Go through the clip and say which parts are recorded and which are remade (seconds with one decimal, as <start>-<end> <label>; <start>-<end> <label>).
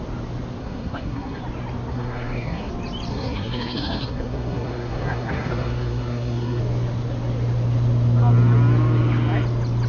0.0-0.6 recorded; 0.6-1.4 remade; 1.4-1.9 recorded; 1.9-2.7 remade; 2.7-3.1 recorded; 3.1-6.6 remade; 6.6-9.9 recorded